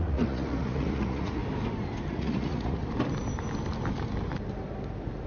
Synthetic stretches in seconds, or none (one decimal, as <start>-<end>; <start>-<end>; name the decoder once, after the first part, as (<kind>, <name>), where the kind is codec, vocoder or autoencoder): 0.0-1.4 (vocoder, Vocos); 2.1-2.8